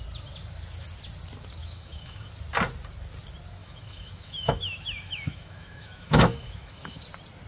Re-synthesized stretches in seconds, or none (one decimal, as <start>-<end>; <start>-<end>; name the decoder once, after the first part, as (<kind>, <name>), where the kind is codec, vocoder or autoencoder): 1.6-2.3 (autoencoder, DAC-VAE); 3.6-7.0